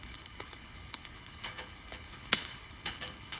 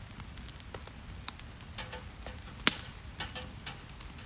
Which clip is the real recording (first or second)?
second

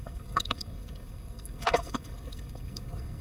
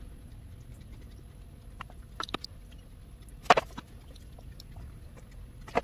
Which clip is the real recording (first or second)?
second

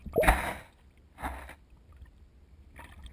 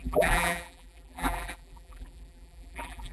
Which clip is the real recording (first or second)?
first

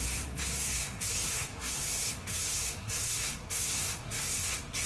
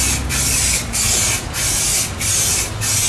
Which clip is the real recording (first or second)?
second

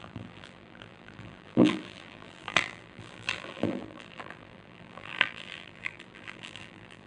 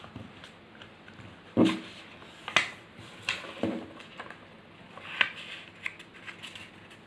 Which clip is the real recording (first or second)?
second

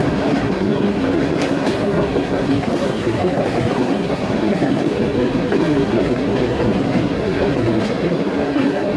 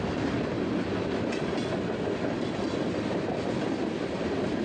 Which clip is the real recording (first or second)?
second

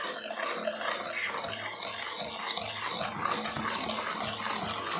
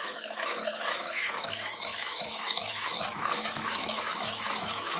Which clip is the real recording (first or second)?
first